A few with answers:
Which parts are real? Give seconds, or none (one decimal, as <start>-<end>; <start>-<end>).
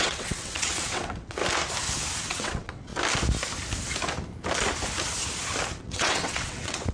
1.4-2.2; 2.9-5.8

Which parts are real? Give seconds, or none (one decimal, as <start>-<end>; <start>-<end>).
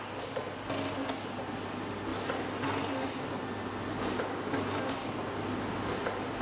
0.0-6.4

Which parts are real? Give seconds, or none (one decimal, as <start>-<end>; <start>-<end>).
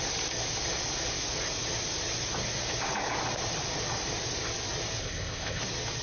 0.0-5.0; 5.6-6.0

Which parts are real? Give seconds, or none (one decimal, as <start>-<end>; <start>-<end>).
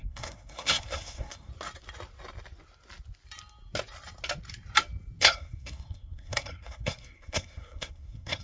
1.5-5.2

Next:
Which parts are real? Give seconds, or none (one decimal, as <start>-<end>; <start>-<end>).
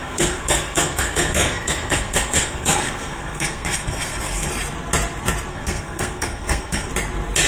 4.5-5.5; 6.9-7.5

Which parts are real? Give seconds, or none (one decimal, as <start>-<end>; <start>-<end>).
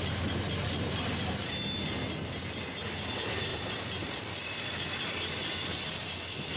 0.0-3.5; 4.2-6.6